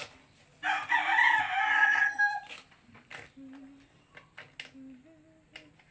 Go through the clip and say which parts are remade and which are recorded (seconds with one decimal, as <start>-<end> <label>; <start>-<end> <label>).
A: 0.0-1.7 recorded; 1.7-2.2 remade; 2.2-5.9 recorded

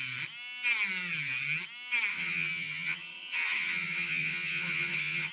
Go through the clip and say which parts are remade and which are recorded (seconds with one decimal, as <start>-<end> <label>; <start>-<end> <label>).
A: 0.0-2.1 recorded; 2.1-5.3 remade

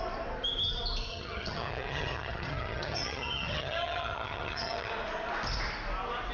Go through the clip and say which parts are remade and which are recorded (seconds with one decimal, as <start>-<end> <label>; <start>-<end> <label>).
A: 0.0-1.1 recorded; 1.1-4.9 remade; 4.9-6.3 recorded

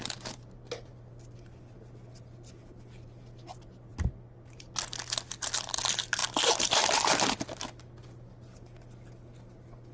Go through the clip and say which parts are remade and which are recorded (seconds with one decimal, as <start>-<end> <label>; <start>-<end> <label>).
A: 0.0-9.9 recorded

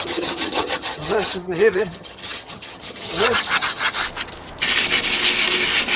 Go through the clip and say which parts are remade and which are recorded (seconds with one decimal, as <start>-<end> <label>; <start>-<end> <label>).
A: 0.0-4.0 remade; 4.0-6.0 recorded

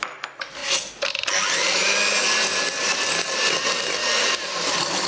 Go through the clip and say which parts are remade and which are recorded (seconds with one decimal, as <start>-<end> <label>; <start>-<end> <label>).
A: 0.0-5.1 recorded

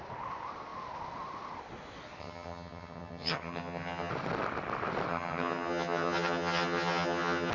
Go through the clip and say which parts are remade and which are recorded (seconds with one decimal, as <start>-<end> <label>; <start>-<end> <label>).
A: 0.0-2.2 recorded; 2.2-4.1 remade; 4.1-5.1 recorded; 5.1-7.5 remade